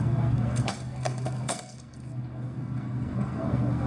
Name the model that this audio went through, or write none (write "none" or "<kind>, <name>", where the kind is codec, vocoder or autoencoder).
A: codec, SNAC